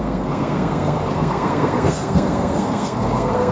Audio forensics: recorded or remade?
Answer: remade